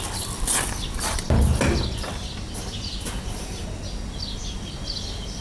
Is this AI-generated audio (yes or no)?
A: no